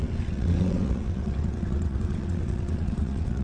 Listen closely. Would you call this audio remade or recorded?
remade